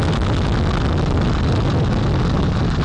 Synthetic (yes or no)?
no